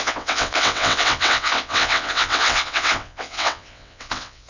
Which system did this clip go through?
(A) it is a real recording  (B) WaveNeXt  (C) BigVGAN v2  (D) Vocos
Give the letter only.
B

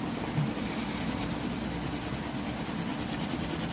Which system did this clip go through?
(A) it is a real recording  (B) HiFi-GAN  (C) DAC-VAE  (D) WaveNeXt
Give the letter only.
A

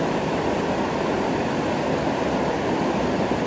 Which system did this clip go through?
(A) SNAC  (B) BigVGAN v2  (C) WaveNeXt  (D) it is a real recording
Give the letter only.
D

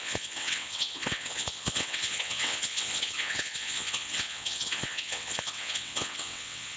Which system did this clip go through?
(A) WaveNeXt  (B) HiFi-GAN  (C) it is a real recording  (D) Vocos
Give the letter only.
A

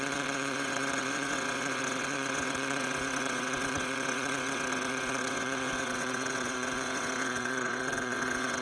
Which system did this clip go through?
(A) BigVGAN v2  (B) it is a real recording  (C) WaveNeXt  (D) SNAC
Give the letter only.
C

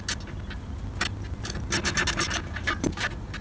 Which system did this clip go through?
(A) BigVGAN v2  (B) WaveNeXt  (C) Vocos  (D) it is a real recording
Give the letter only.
D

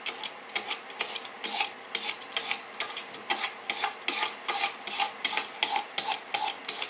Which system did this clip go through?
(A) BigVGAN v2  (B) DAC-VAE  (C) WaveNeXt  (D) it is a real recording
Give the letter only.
D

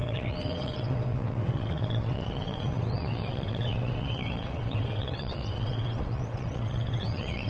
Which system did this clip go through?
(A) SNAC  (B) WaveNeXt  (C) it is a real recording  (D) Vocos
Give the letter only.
B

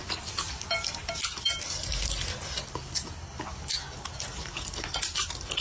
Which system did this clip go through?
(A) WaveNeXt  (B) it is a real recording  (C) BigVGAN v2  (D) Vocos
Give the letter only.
B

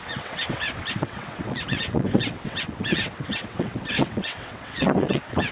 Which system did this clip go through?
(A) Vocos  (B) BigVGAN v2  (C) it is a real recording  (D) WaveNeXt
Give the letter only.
D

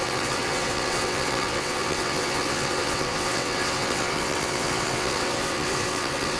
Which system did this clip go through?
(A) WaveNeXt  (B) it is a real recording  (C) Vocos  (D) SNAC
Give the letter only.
A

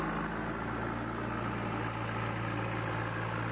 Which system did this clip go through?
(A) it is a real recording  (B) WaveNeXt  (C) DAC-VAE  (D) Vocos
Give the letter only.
A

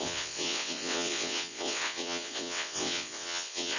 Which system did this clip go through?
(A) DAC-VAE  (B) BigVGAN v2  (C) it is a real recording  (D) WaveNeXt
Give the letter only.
D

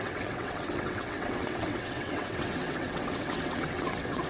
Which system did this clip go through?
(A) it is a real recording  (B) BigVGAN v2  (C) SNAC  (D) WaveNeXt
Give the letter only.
D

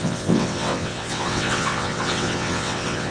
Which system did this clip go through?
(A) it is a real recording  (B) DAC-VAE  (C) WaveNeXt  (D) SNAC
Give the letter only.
C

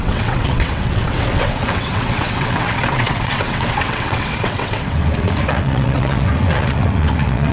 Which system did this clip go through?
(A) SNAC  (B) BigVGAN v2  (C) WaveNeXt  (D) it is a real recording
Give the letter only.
C